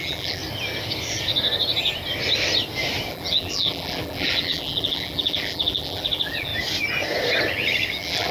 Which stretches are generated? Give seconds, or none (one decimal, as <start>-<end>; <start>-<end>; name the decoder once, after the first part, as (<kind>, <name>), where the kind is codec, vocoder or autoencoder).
0.0-0.4 (vocoder, BigVGAN v2); 3.1-6.5; 7.9-8.3